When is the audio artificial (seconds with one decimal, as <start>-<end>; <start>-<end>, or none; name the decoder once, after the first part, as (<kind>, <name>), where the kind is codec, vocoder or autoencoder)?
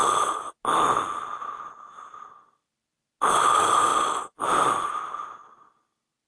none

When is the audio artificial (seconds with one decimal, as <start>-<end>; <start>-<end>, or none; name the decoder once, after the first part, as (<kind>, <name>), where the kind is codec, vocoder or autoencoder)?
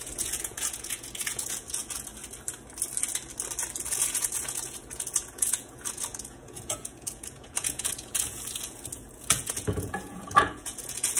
0.0-2.1 (vocoder, Vocos); 3.8-11.2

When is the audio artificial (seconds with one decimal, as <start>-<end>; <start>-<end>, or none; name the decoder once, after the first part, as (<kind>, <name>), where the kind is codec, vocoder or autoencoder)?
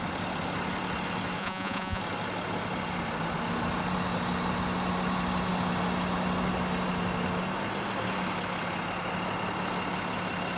1.4-2.0 (vocoder, Vocos)